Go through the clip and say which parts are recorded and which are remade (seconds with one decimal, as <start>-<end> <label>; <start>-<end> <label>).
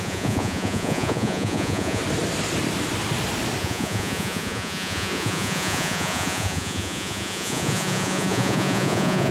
0.0-2.0 remade; 2.0-3.6 recorded; 3.6-9.3 remade